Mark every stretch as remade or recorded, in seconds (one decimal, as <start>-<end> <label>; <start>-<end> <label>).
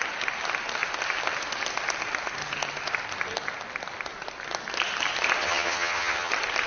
0.0-5.4 recorded; 5.4-6.3 remade; 6.3-6.7 recorded